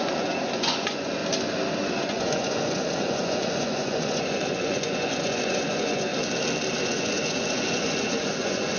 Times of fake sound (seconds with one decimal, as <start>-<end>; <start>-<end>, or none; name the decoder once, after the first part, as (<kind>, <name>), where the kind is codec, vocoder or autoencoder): 0.0-1.2 (vocoder, Vocos); 1.8-6.1; 6.8-8.8